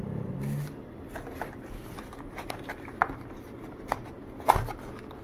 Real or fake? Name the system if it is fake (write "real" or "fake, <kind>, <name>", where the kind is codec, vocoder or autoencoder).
real